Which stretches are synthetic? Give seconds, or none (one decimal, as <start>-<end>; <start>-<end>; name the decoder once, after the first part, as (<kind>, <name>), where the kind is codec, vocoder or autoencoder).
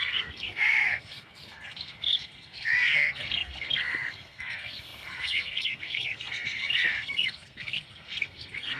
0.0-8.8 (codec, SNAC)